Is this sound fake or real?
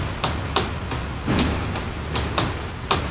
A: real